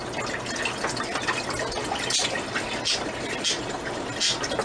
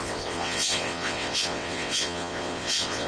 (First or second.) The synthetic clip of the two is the second